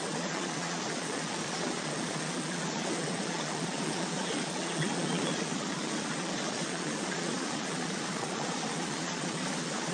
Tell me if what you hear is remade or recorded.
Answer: remade